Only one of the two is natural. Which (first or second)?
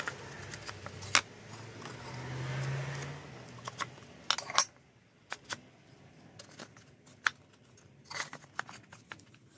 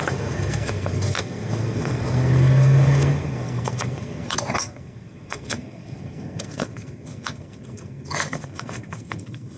first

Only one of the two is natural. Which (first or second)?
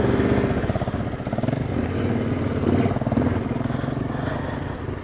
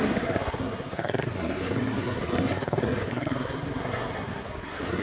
first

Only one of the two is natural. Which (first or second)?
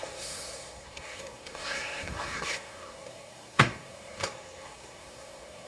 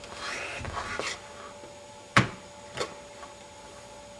second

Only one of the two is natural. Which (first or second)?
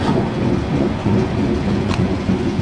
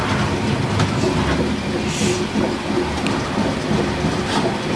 second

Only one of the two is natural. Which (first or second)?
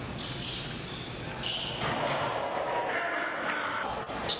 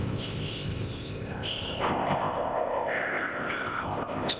first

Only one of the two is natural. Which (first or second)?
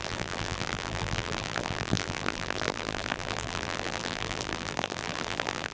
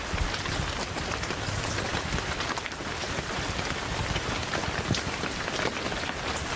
second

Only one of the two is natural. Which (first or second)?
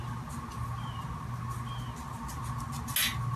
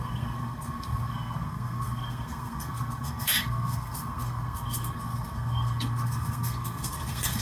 first